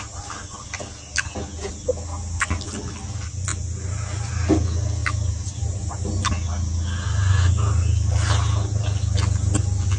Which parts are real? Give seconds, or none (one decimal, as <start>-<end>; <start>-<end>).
0.0-3.5; 4.3-5.0; 6.3-10.0